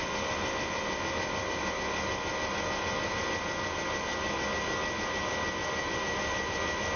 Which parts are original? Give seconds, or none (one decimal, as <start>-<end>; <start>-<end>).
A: 0.0-7.0

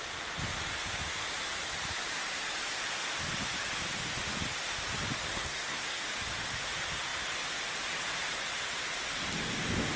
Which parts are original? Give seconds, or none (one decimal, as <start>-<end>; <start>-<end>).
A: 0.0-5.3; 6.0-10.0

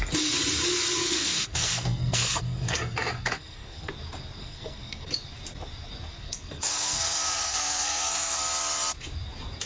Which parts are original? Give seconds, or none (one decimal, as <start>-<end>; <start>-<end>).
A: 0.0-1.0; 3.9-4.4; 5.1-6.1; 8.4-9.7